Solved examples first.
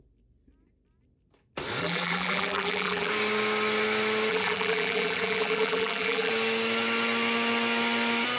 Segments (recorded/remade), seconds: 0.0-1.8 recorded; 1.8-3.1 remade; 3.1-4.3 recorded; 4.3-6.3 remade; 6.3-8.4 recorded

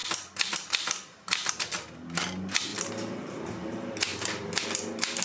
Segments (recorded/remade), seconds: 0.0-1.5 remade; 1.5-2.7 recorded; 2.7-3.5 remade; 3.5-4.1 recorded; 4.1-4.6 remade; 4.6-5.2 recorded

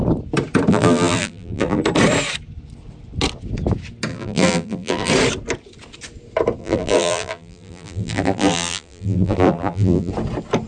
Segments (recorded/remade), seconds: 0.0-0.7 recorded; 0.7-1.8 remade; 1.8-4.1 recorded; 4.1-5.1 remade; 5.1-6.6 recorded; 6.6-10.1 remade; 10.1-10.7 recorded